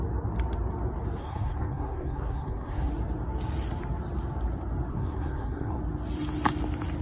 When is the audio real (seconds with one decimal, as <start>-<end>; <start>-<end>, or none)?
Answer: 0.0-1.2; 2.9-4.9; 5.8-7.0